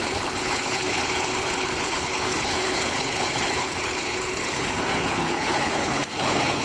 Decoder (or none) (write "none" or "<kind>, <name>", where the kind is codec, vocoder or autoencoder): codec, HILCodec